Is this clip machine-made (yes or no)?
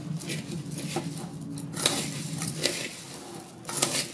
no